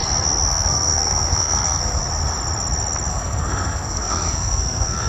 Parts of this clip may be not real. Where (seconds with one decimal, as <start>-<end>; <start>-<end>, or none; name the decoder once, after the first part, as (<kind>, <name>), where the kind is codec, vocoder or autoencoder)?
0.5-2.0 (codec, SNAC); 3.1-5.1